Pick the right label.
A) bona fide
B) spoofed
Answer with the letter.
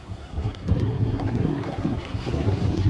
B